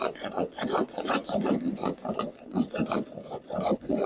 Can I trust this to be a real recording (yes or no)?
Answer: no